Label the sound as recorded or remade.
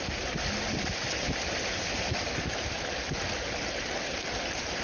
recorded